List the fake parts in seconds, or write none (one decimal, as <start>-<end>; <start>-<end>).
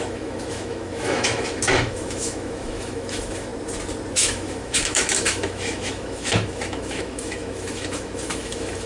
0.0-3.5; 4.1-8.9